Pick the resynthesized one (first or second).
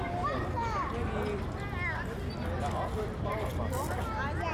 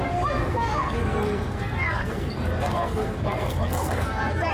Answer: second